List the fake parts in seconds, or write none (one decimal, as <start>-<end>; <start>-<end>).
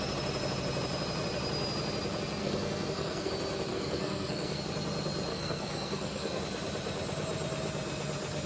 2.4-3.3; 3.7-4.6; 5.3-6.4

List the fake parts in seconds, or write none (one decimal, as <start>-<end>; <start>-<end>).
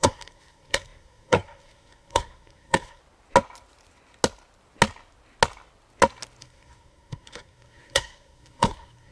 0.0-3.0; 6.4-9.1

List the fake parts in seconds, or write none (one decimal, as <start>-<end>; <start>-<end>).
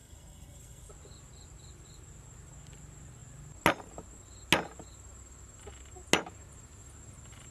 0.0-0.9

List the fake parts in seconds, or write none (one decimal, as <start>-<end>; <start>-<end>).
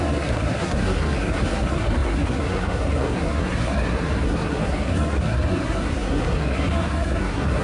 0.0-7.6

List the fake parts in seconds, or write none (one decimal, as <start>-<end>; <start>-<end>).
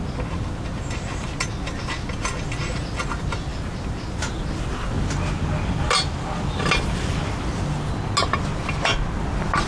none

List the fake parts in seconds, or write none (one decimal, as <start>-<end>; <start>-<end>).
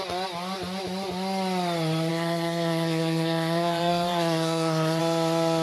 2.1-5.0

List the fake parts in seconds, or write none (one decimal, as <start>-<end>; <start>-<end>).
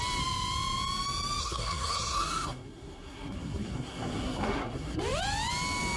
1.4-5.0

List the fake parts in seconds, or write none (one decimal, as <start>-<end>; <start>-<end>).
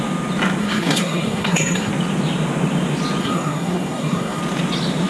0.6-1.9; 3.2-4.4